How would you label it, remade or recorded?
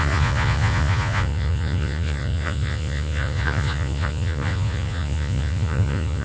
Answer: remade